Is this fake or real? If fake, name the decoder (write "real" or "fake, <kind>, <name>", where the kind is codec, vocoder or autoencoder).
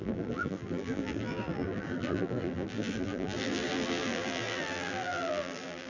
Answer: fake, vocoder, BigVGAN v2